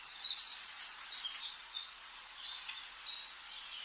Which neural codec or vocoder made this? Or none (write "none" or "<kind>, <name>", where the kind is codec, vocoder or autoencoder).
vocoder, Vocos